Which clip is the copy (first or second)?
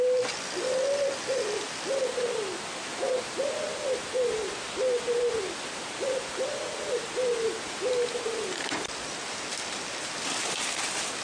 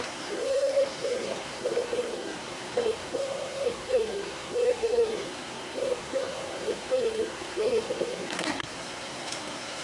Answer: second